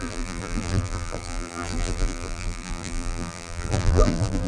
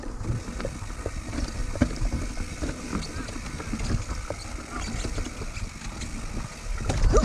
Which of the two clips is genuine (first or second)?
second